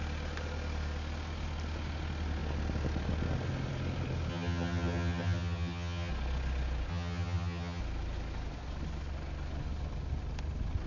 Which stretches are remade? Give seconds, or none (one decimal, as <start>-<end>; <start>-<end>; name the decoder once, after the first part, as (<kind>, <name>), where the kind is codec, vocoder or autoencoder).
4.3-6.1 (vocoder, HiFi-GAN); 6.9-7.8